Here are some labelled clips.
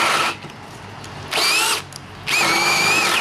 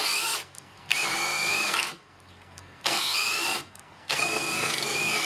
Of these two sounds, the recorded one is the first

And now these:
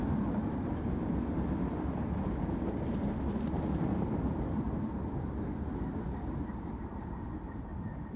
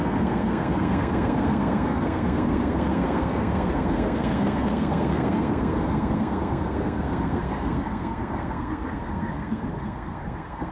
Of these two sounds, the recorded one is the first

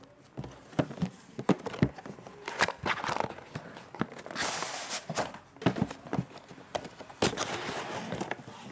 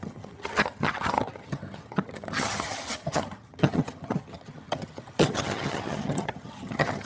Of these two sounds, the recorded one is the first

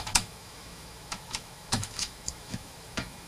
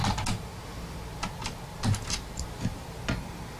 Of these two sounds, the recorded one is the second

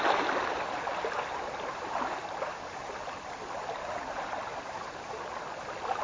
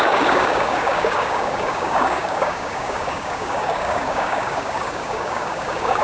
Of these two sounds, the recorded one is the first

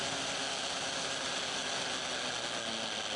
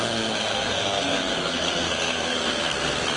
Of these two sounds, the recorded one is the first